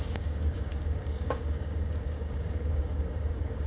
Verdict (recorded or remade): remade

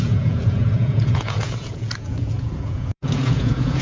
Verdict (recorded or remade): remade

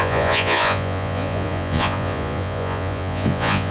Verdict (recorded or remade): remade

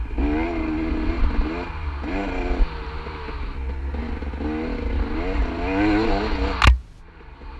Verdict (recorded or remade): recorded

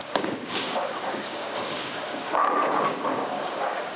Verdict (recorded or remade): remade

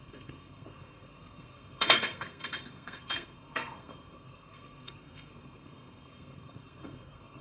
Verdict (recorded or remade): remade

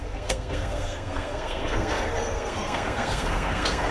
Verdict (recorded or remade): remade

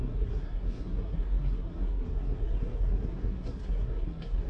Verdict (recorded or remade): remade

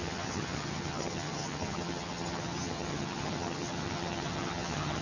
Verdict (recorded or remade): remade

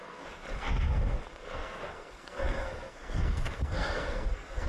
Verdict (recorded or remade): remade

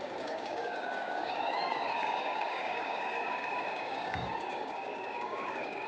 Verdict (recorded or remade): remade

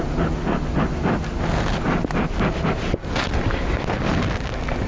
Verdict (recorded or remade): recorded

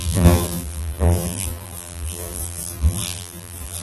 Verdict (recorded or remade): remade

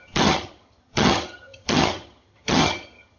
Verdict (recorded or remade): remade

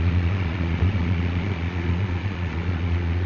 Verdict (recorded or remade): remade